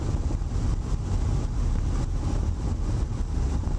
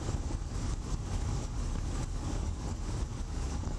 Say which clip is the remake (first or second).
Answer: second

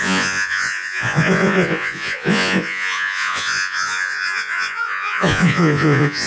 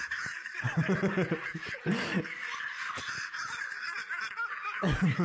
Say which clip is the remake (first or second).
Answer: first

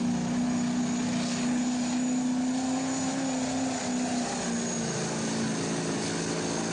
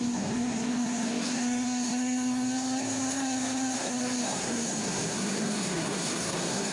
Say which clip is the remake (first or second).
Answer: second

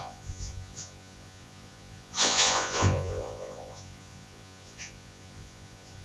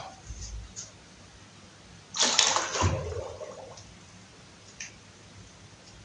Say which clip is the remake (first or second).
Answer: first